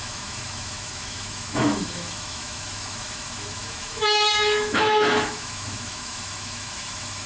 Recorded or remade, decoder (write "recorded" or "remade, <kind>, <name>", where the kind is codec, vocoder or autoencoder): remade, autoencoder, DAC-VAE